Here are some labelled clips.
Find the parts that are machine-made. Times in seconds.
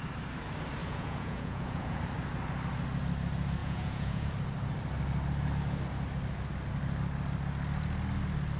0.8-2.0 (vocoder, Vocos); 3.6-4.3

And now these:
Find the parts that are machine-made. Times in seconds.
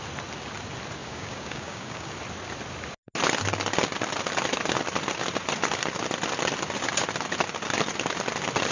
1.0-2.1 (codec, DAC)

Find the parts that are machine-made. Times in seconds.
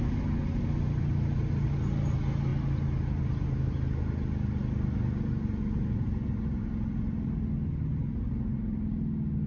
none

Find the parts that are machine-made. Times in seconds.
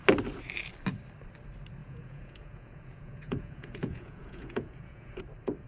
1.8-5.2 (vocoder, Vocos)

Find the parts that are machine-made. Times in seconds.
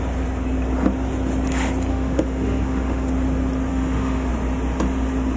1.9-3.1 (autoencoder, DAC-VAE); 3.7-4.3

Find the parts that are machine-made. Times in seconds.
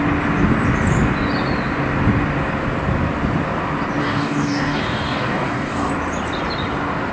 4.0-5.9 (codec, DAC)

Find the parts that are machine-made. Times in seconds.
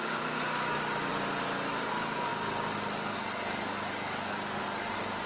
0.0-1.1 (codec, DAC); 1.9-5.3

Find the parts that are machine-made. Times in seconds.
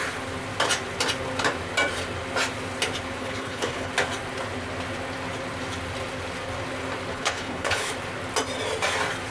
3.2-3.9 (codec, HILCodec); 7.1-7.9